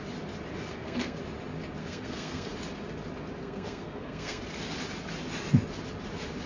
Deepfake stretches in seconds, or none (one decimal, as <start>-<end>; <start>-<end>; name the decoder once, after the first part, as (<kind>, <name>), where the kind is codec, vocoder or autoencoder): 0.7-1.2 (codec, SNAC); 1.8-2.5; 3.4-4.4